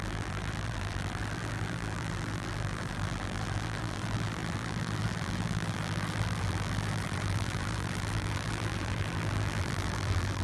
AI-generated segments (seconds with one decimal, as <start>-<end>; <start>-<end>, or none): 0.0-10.4